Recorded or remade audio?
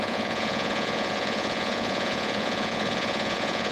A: remade